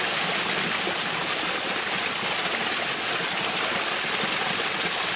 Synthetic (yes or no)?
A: no